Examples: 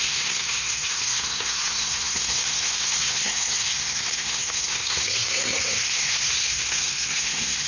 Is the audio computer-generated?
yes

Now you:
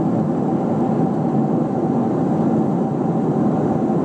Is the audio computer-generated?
no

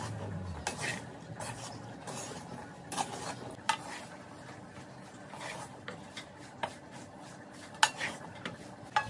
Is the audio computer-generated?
no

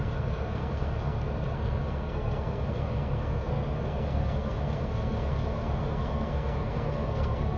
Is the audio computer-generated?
yes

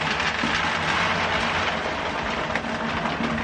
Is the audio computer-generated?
no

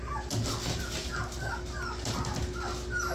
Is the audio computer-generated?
no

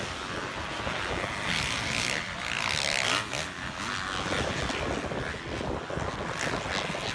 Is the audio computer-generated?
no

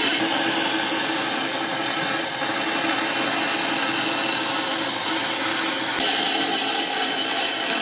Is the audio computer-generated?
no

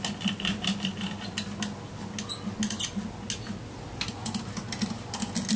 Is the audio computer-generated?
no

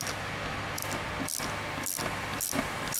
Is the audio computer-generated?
no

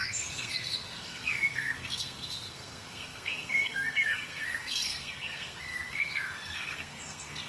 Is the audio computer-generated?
yes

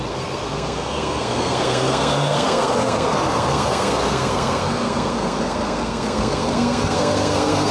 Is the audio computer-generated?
yes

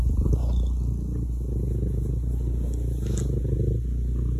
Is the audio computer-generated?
no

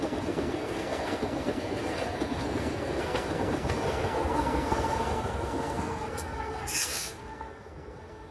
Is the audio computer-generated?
yes